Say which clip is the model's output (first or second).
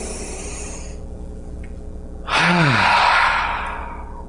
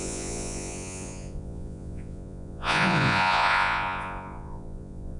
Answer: second